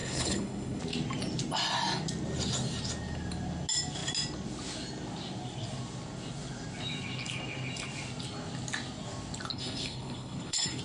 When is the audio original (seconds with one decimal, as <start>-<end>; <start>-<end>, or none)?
0.8-9.5